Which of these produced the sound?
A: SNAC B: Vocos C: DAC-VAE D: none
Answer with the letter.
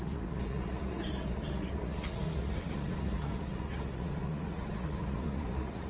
B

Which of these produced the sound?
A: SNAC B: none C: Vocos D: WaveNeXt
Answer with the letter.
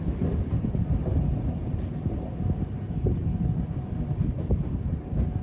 B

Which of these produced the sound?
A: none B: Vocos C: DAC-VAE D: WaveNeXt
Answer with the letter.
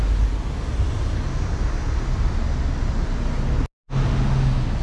A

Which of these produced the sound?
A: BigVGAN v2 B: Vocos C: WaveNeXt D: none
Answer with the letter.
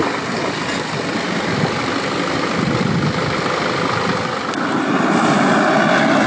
D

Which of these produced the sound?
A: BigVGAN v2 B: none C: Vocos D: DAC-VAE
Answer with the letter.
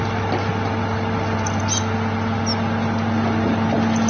B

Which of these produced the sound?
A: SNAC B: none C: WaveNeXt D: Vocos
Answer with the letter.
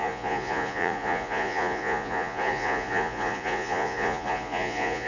D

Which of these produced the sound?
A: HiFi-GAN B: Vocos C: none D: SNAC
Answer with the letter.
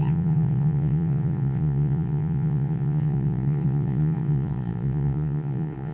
B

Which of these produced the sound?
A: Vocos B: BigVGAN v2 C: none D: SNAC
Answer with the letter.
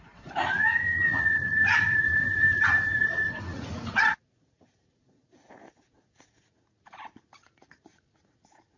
A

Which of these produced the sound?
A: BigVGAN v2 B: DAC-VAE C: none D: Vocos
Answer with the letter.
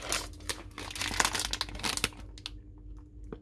C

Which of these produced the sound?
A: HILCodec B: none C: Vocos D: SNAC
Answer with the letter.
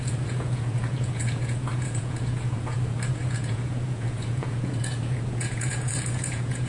C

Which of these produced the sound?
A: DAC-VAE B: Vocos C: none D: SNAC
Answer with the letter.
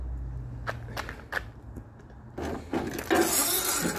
C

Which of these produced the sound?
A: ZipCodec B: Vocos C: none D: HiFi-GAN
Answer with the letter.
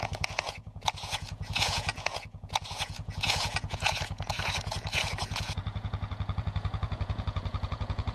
B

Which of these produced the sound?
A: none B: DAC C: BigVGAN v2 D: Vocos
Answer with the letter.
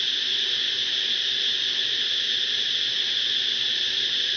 A